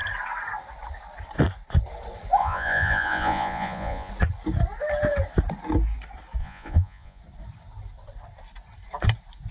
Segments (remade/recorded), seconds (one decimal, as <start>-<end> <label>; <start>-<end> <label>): 0.0-2.4 recorded; 2.4-4.1 remade; 4.1-6.4 recorded; 6.4-7.2 remade; 7.2-9.5 recorded

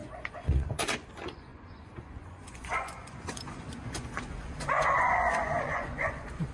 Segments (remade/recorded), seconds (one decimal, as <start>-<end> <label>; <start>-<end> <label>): 0.0-6.5 remade

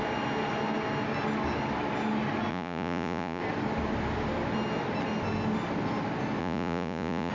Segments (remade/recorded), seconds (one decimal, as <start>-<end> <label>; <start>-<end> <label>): 0.0-2.5 recorded; 2.5-3.4 remade; 3.4-6.4 recorded; 6.4-7.3 remade

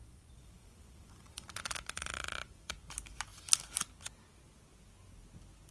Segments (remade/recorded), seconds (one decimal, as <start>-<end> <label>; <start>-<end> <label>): 0.0-2.8 remade; 2.8-5.7 recorded

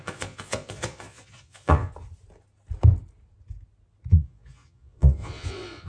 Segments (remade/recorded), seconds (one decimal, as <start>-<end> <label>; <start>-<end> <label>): 0.0-1.9 remade; 1.9-4.1 recorded; 4.1-5.9 remade